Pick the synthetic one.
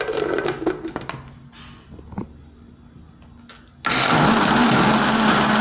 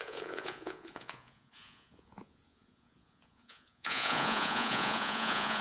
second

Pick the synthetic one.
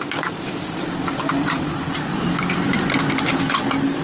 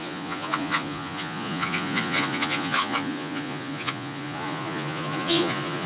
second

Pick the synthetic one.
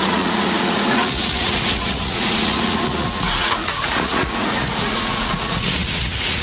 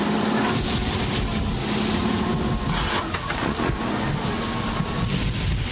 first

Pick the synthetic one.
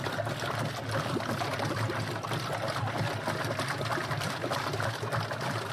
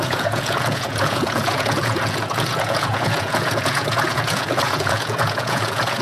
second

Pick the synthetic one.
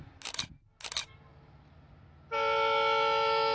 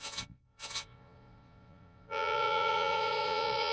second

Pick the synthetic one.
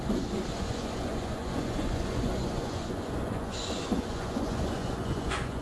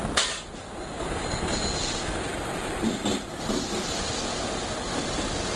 first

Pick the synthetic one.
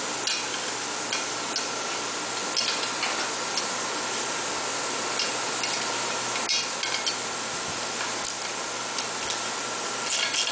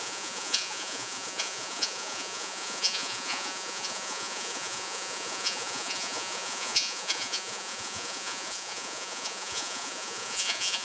second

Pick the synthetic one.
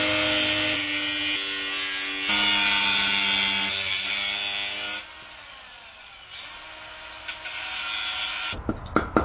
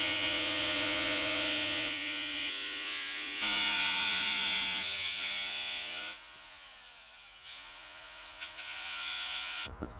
second